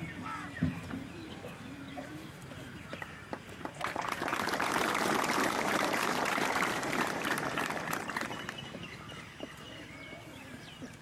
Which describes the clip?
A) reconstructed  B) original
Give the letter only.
A